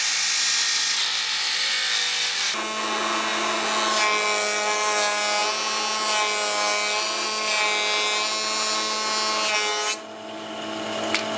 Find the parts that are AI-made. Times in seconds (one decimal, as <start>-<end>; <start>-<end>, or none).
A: none